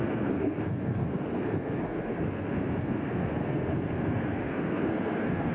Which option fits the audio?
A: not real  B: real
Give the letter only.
A